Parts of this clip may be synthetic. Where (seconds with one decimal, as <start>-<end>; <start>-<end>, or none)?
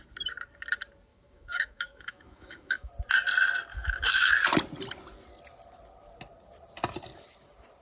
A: 1.1-2.9; 3.7-4.3